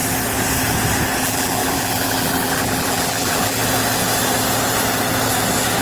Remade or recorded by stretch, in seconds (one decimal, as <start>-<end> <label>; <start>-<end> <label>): 0.0-1.2 recorded; 1.2-3.6 remade; 3.6-5.8 recorded